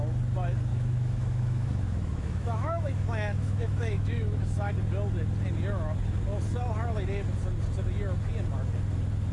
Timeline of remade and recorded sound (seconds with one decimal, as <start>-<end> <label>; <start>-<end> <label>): 0.0-0.7 recorded; 0.7-4.7 remade; 4.7-9.3 recorded